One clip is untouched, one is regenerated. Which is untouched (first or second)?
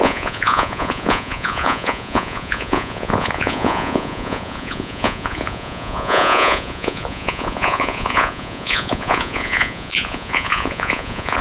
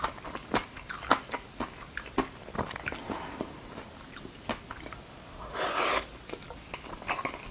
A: second